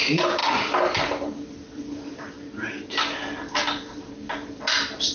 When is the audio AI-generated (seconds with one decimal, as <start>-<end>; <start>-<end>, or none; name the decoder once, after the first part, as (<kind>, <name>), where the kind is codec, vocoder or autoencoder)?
none